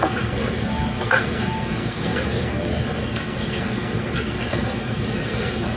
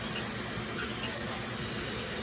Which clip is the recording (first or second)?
second